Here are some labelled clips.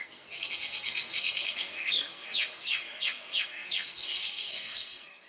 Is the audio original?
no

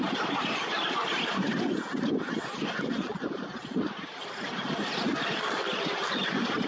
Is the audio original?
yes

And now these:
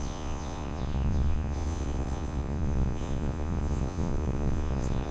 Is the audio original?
no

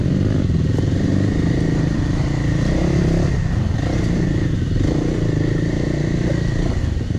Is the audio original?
yes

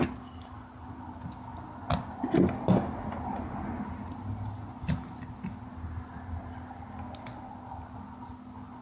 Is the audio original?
yes